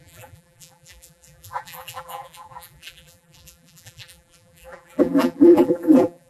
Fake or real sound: fake